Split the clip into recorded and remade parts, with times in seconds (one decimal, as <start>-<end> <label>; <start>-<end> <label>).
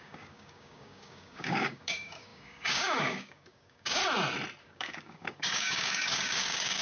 0.0-4.0 remade; 4.0-4.6 recorded; 4.6-6.8 remade